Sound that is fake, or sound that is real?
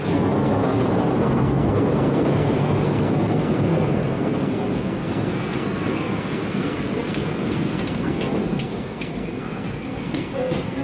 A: fake